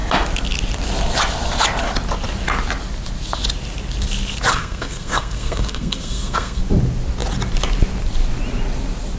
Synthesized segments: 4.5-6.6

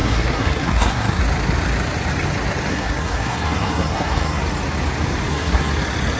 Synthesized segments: 0.0-1.2; 2.7-4.4; 5.3-5.7

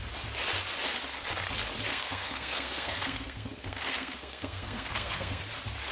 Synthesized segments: 1.9-5.4

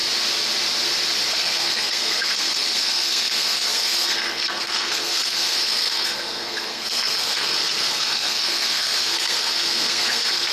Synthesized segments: 1.3-10.5

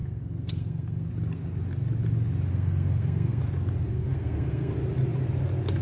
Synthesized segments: 0.0-1.1; 2.5-3.4; 3.9-4.7

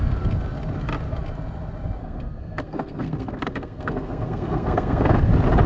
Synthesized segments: 2.0-5.3

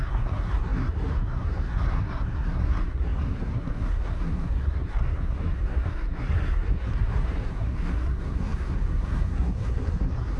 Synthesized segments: 0.0-10.4